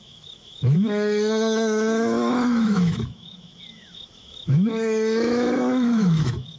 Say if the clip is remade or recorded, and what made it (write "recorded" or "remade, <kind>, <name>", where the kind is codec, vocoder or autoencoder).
remade, autoencoder, DAC-VAE